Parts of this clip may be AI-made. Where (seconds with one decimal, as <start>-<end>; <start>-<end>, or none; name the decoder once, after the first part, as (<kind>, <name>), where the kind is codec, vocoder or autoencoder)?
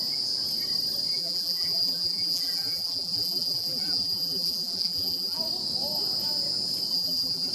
1.1-5.4 (vocoder, BigVGAN v2); 6.9-7.5